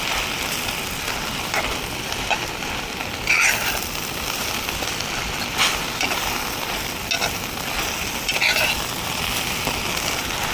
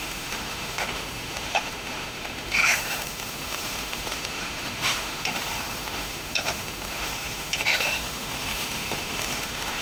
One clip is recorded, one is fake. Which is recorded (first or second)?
first